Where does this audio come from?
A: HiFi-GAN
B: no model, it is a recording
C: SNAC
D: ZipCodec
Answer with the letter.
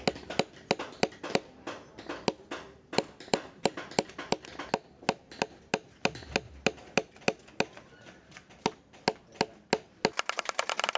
B